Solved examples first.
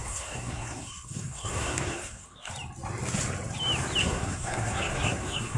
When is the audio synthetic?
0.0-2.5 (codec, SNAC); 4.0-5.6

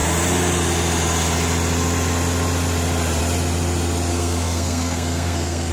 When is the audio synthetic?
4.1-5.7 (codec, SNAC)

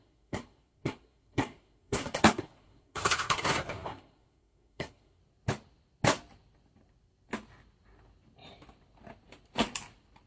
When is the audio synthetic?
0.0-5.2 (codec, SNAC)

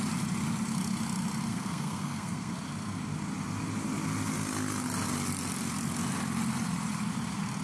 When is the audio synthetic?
1.5-2.5 (codec, SNAC)

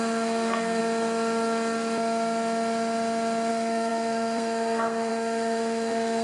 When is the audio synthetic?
0.0-0.8 (codec, SNAC); 3.5-6.2

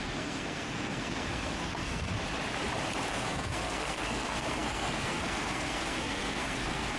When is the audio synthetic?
0.0-2.1 (codec, SNAC); 3.1-7.0